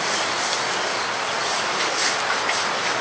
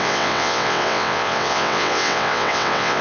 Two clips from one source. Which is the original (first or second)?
first